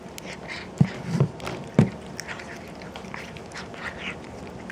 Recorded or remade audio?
recorded